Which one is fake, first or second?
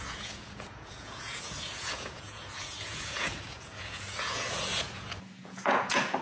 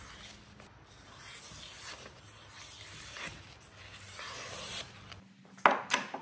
first